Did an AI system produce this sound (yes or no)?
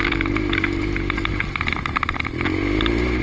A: no